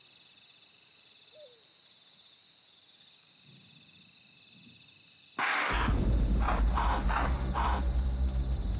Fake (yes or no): no